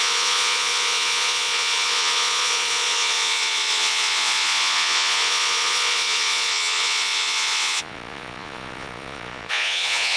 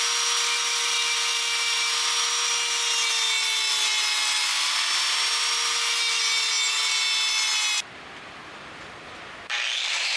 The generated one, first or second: first